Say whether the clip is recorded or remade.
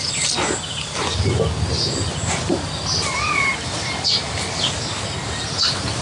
recorded